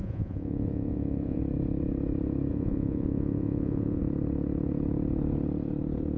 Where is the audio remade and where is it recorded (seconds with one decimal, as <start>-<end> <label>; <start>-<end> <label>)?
0.0-1.4 remade; 1.4-2.5 recorded; 2.5-4.0 remade; 4.0-6.2 recorded